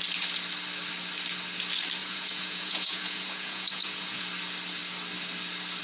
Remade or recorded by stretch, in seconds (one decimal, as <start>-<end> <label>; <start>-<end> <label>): 0.0-2.0 recorded; 2.0-4.2 remade; 4.2-5.8 recorded